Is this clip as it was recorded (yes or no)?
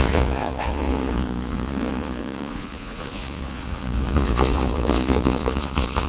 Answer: no